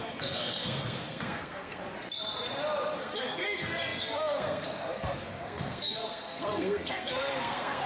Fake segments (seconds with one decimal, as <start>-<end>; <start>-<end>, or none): 0.0-1.8; 3.0-7.9